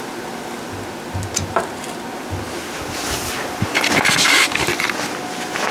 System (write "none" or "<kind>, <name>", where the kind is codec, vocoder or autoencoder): none